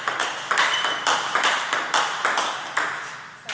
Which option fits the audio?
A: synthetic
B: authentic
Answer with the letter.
B